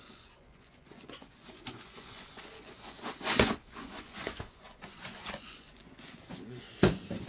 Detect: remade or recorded remade